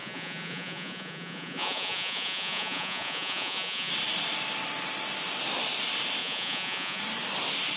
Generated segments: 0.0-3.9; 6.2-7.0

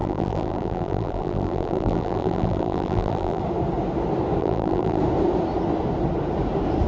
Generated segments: 0.0-3.4; 4.4-5.0

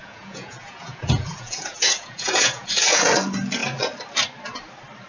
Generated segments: 0.0-3.1

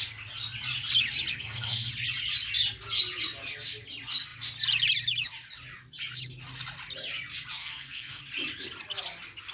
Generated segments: 1.3-1.9; 7.6-8.2

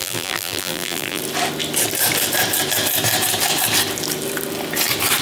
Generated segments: 0.0-1.2

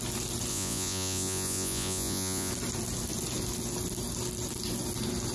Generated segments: 0.5-2.5

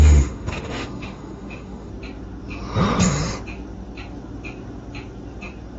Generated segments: 0.0-1.9

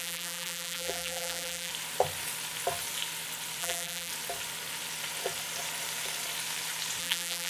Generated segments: 0.0-1.7; 3.6-4.1; 7.0-7.5